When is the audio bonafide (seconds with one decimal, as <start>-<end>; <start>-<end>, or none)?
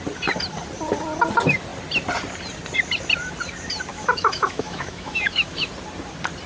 0.0-3.9; 5.7-6.5